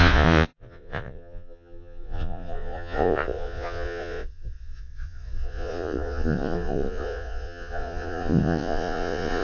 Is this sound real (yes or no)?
no